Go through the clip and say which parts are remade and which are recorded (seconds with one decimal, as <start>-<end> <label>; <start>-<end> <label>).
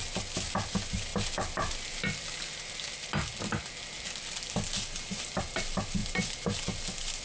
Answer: 0.0-6.0 recorded; 6.0-6.6 remade; 6.6-7.2 recorded